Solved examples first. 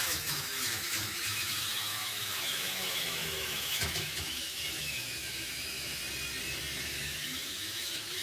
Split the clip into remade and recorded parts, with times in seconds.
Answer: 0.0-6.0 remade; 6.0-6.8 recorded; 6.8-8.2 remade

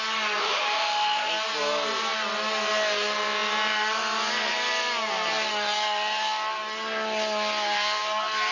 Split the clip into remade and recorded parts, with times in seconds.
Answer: 0.0-0.4 recorded; 0.4-1.3 remade; 1.3-8.5 recorded